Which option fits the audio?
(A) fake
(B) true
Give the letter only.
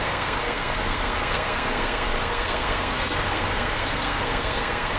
A